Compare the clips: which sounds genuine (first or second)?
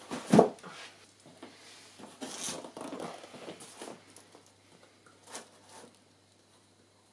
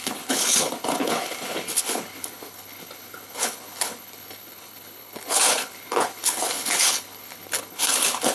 first